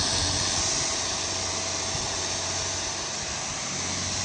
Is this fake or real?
real